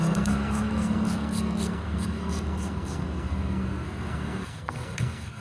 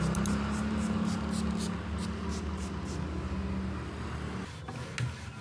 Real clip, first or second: second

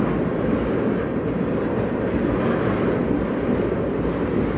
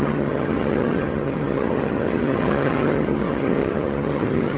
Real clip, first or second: first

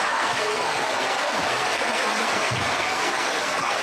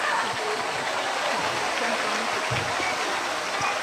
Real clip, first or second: second